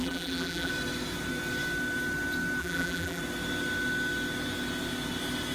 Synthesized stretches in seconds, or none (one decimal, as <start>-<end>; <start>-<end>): 0.0-0.7; 2.6-3.2